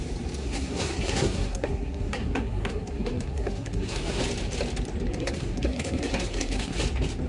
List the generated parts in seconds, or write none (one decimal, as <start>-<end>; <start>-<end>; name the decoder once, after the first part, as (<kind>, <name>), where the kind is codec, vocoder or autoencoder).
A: 0.4-4.2 (codec, SNAC); 5.1-6.8